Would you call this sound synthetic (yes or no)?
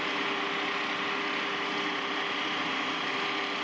no